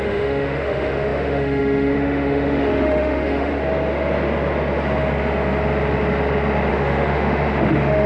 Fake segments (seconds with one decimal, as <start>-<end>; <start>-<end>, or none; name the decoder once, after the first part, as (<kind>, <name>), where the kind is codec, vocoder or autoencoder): 0.0-3.5 (autoencoder, DAC-VAE); 6.7-8.1